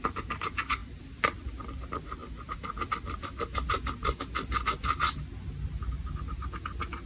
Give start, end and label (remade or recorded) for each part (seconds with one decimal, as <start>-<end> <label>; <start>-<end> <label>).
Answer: 0.0-7.1 recorded

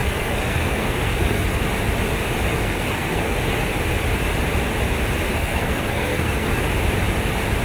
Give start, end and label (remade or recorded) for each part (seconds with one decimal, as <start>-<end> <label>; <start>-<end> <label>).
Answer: 0.0-1.6 remade; 1.6-2.5 recorded; 2.5-3.7 remade; 3.7-5.3 recorded; 5.3-6.6 remade; 6.6-7.6 recorded

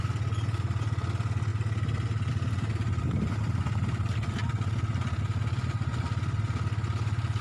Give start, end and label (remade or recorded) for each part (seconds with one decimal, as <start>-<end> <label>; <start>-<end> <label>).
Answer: 0.0-7.4 recorded

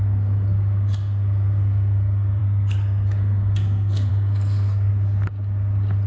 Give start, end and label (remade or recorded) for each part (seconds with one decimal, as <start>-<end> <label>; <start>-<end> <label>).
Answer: 0.0-4.9 remade; 4.9-6.1 recorded

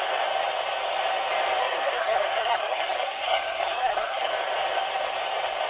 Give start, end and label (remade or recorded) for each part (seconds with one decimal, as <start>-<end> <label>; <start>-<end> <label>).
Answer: 0.0-1.6 recorded; 1.6-4.3 remade; 4.3-5.7 recorded